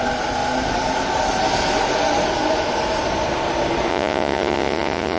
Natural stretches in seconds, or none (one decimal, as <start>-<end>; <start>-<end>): 0.0-3.9